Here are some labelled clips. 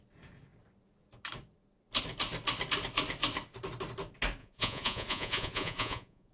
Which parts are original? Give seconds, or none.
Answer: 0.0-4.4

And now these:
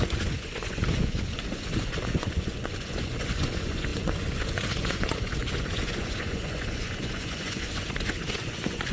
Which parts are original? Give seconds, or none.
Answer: none